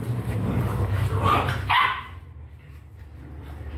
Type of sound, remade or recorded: recorded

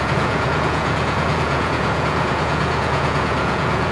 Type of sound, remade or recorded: remade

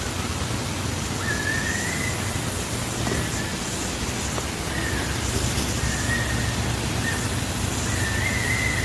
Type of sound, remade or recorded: recorded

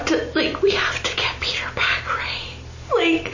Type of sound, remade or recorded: recorded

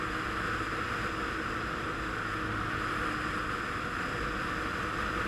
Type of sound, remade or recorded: recorded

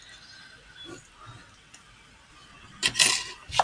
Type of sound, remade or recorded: recorded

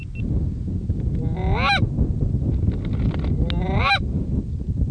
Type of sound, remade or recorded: recorded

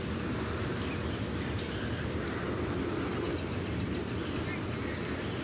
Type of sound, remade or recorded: recorded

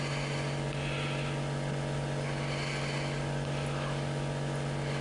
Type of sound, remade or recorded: recorded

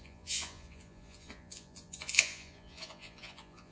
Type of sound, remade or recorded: remade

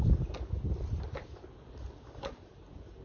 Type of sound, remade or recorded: recorded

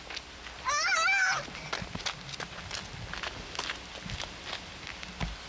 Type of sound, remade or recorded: recorded